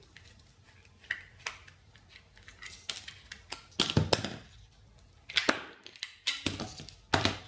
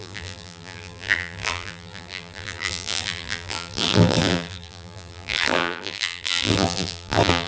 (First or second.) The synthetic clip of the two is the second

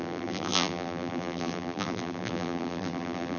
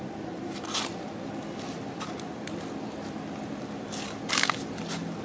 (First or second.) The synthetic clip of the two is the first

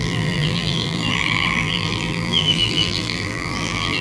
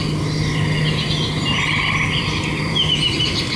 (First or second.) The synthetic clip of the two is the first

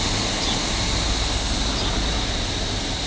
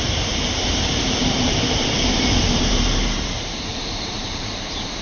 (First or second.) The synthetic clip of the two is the second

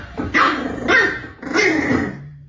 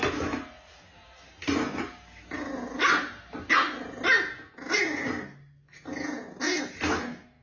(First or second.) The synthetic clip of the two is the first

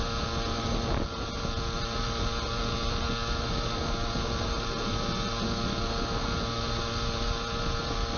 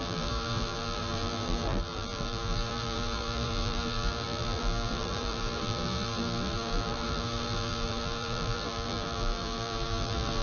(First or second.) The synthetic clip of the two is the second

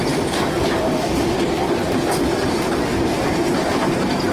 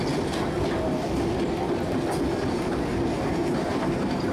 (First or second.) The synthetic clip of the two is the first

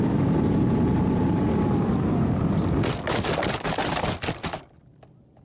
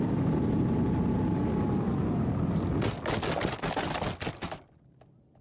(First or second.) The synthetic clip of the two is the first